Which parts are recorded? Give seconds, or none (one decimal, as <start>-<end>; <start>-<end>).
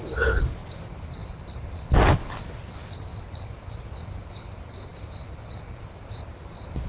0.0-0.6; 2.3-3.1; 3.8-6.9